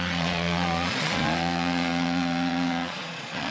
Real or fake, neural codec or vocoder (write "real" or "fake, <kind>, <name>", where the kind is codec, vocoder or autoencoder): fake, vocoder, Vocos